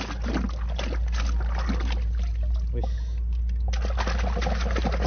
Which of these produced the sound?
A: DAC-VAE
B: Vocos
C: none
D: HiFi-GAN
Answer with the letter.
C